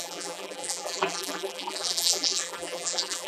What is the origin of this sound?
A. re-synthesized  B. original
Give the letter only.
A